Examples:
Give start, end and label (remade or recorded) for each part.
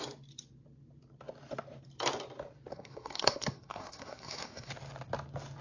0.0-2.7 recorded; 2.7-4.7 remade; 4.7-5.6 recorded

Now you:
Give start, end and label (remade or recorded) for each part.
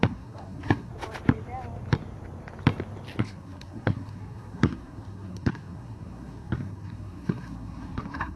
0.0-0.9 remade; 0.9-3.2 recorded; 3.2-8.4 remade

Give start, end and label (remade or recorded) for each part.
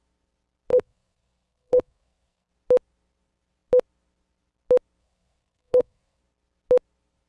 0.0-0.7 recorded; 0.7-2.5 remade; 2.5-5.0 recorded; 5.0-6.2 remade; 6.2-7.3 recorded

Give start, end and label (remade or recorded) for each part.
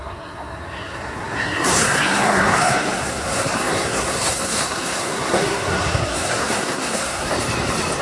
0.0-7.3 remade; 7.3-8.0 recorded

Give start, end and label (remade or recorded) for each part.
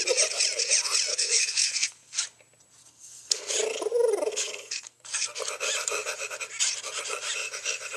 0.0-1.1 recorded; 1.1-2.2 remade; 2.2-2.8 recorded; 2.8-3.5 remade; 3.5-4.3 recorded; 4.3-5.4 remade; 5.4-8.0 recorded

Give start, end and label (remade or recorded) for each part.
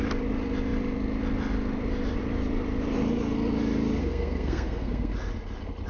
0.0-4.0 recorded; 4.0-5.1 remade; 5.1-5.9 recorded